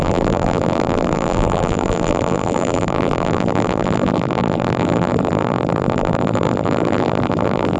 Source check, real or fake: fake